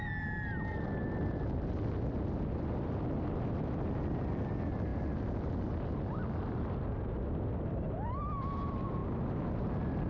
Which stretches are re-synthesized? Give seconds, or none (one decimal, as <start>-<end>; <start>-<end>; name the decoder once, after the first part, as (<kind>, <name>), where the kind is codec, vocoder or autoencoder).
none